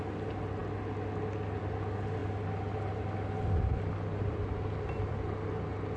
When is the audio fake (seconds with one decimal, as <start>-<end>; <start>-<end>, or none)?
none

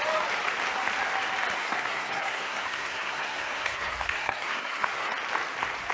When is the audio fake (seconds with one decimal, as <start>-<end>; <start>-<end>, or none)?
1.6-5.1

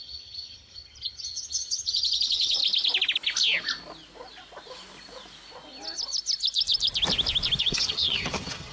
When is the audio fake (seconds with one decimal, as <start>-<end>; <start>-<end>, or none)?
0.0-2.6; 7.6-8.7

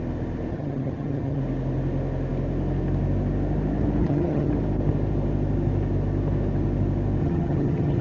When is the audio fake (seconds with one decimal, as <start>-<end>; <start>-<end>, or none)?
0.5-1.4; 4.0-4.5; 7.2-8.0

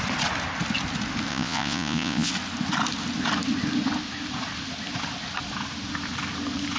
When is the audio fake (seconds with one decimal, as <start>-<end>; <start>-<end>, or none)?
1.3-2.3